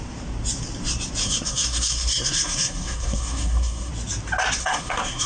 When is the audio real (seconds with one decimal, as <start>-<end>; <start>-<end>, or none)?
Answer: 0.0-1.2; 3.9-4.6